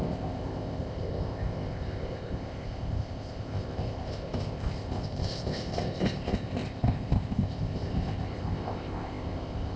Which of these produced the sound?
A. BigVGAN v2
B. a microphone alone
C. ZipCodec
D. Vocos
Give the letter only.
C